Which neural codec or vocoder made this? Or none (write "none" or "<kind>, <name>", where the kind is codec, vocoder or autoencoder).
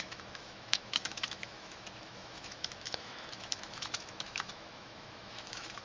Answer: autoencoder, DAC-VAE